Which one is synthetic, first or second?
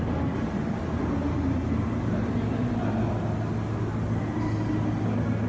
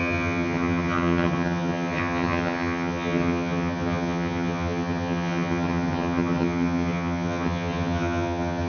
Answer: second